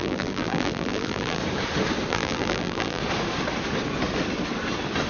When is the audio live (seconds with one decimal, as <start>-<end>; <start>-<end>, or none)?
1.4-2.1; 3.0-5.1